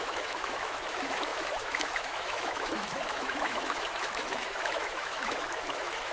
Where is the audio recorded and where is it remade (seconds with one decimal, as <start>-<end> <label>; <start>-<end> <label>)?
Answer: 0.0-6.1 remade